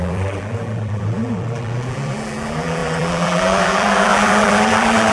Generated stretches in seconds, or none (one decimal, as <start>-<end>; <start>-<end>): 0.0-5.1